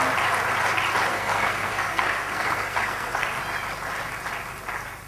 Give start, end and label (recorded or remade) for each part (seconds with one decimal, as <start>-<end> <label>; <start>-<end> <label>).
0.0-1.1 recorded; 1.1-3.4 remade; 3.4-5.1 recorded